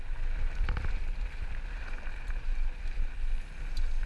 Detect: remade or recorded recorded